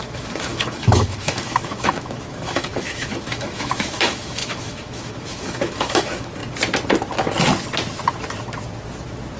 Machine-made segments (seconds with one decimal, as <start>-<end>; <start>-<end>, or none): 0.0-6.4